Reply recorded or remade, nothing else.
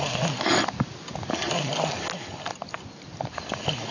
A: recorded